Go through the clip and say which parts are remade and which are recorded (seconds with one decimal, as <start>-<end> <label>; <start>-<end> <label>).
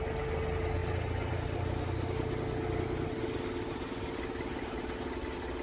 0.0-5.6 recorded